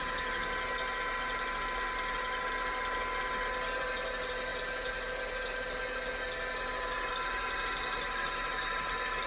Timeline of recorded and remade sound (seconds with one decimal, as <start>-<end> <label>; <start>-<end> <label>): 0.0-9.3 recorded